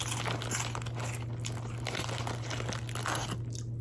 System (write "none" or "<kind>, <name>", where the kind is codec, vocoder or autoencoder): none